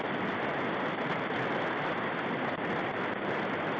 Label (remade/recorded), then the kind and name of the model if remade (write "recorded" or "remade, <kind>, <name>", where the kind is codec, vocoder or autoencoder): recorded